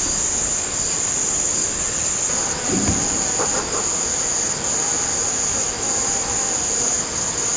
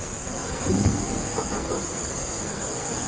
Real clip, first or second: first